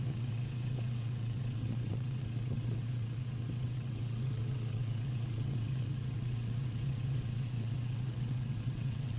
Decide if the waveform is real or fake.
fake